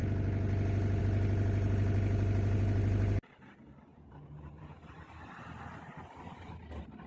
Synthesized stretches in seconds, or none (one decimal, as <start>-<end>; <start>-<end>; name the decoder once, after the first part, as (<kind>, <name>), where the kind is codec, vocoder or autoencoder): 3.9-4.8 (vocoder, Vocos)